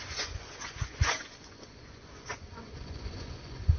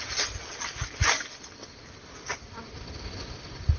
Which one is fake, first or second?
first